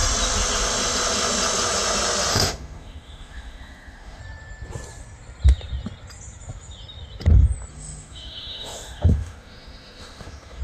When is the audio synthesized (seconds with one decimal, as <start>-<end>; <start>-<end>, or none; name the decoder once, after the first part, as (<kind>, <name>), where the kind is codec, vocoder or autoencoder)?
2.3-4.2 (autoencoder, DAC-VAE); 7.7-10.6